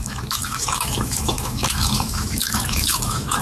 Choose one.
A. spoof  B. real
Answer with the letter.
A